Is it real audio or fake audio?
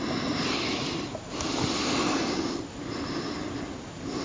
real